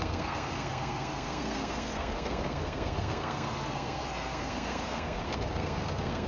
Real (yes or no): no